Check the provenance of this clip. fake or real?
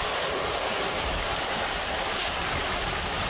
real